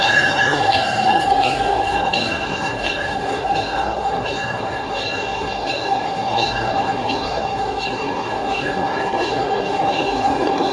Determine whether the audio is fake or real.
fake